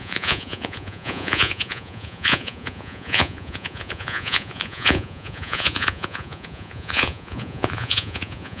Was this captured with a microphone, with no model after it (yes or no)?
no